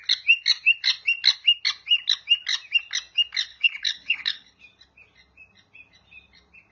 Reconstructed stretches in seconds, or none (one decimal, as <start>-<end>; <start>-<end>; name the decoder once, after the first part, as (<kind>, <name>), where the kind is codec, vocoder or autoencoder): 3.5-4.6 (codec, HILCodec)

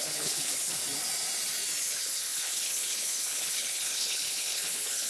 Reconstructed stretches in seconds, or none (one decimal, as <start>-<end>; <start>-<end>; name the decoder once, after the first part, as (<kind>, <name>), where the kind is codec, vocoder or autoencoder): 0.0-0.8 (codec, HILCodec); 1.8-5.1

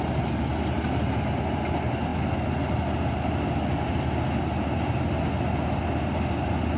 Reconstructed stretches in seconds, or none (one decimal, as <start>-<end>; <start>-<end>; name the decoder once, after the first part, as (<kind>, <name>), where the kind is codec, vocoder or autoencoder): none

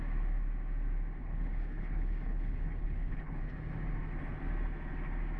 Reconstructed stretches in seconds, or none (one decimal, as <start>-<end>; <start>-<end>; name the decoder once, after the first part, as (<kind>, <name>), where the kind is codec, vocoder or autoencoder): 1.2-3.4 (codec, HILCodec)

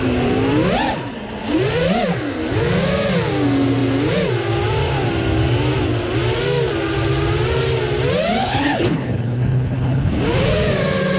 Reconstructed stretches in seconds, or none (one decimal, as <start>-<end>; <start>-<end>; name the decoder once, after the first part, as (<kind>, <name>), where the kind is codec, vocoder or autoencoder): 8.4-10.2 (codec, HILCodec)

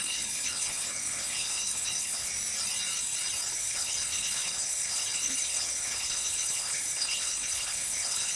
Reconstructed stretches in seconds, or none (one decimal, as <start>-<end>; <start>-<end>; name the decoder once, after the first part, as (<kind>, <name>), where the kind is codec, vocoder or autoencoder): 0.0-2.3 (codec, HILCodec); 3.5-8.4

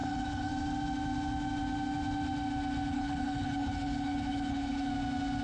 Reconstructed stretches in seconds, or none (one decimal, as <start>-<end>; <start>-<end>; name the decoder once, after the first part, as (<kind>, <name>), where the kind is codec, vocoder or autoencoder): 0.0-0.5 (codec, HILCodec); 2.9-4.9